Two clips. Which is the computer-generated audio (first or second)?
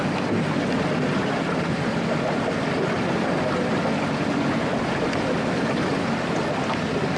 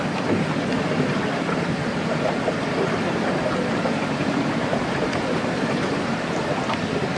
second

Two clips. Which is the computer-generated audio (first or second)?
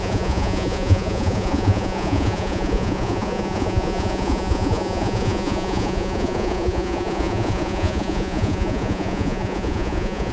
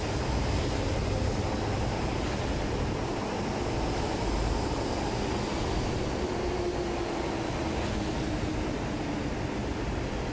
first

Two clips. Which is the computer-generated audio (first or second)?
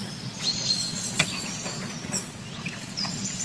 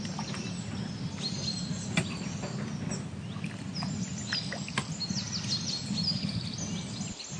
first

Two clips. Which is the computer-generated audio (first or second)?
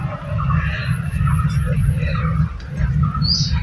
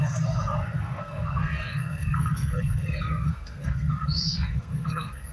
second